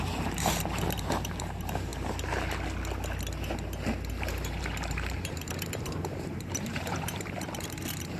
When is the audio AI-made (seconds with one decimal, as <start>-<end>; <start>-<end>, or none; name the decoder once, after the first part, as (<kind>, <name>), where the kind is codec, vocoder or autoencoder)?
0.0-1.9 (vocoder, BigVGAN v2); 4.1-8.2